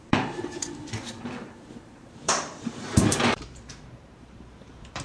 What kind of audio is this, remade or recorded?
remade